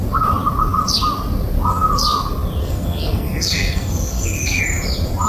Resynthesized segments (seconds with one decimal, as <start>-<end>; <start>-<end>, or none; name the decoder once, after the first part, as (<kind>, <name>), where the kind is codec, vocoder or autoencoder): 2.6-4.6 (codec, SNAC)